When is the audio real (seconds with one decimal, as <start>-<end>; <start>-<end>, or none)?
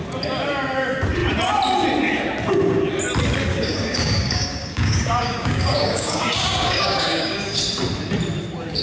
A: 0.0-3.5; 7.6-8.8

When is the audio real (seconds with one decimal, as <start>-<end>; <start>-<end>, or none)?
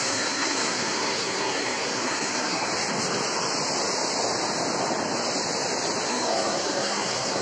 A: 2.7-6.1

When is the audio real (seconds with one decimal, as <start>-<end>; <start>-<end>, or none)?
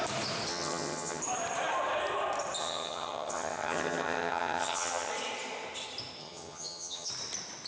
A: 0.0-0.5; 1.2-2.6; 5.1-6.2; 7.1-7.7